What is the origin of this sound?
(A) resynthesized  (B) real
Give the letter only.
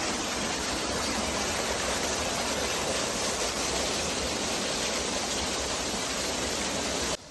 B